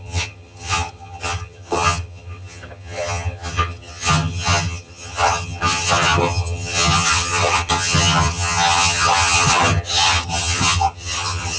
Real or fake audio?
fake